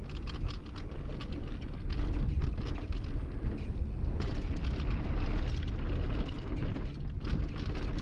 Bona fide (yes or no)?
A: yes